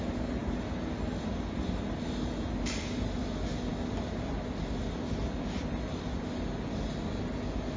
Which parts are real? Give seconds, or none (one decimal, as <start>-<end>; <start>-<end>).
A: 0.0-7.8